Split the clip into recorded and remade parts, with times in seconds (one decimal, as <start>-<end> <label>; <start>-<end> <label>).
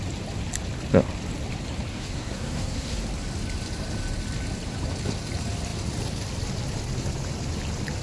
0.0-1.9 recorded; 1.9-3.0 remade; 3.0-8.0 recorded